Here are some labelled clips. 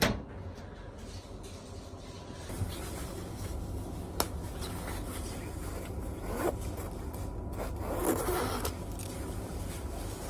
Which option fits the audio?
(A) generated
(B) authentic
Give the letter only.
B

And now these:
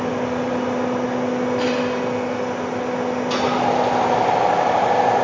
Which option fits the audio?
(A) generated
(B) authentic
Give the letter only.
B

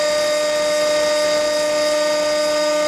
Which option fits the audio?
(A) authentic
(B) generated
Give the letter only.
A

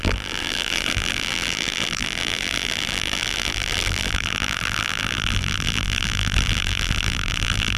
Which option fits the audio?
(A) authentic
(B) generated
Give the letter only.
B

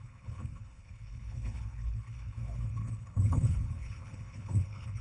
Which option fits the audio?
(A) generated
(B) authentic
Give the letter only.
A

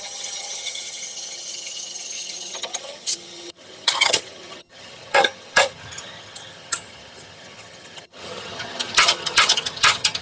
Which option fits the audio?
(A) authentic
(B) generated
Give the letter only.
B